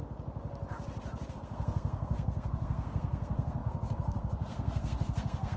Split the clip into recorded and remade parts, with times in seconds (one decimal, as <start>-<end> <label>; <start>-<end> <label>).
0.0-1.3 recorded; 1.3-5.6 remade